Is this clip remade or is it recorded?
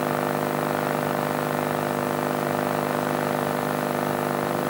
recorded